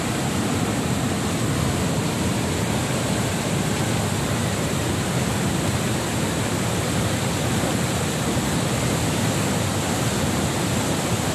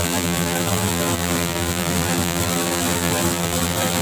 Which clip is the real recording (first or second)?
first